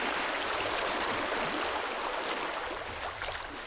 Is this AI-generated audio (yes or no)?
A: no